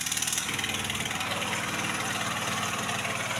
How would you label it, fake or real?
real